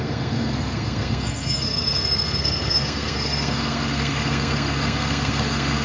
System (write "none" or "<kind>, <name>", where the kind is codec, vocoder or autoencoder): codec, SNAC